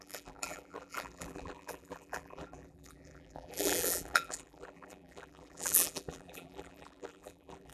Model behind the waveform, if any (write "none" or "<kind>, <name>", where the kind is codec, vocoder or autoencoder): vocoder, BigVGAN v2